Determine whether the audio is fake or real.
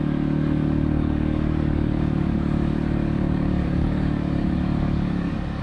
fake